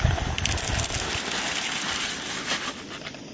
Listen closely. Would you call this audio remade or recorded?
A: recorded